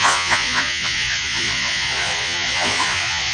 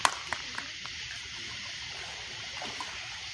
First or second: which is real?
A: second